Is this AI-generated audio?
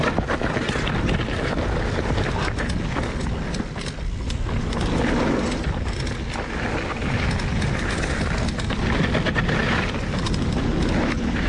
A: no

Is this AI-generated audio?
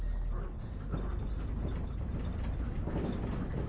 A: no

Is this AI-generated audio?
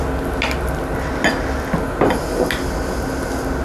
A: no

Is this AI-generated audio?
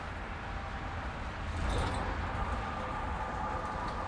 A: no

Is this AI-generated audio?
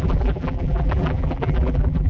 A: yes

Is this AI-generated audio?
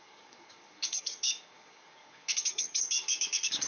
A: yes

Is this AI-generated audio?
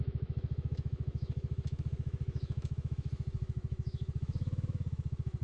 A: yes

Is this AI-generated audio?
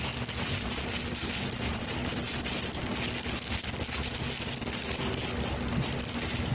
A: no